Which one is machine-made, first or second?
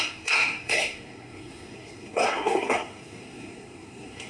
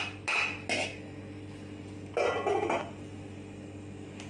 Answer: first